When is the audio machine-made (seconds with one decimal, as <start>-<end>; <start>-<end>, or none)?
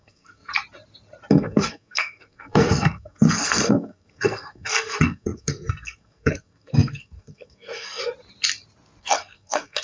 0.0-0.5; 1.3-8.0; 9.0-9.8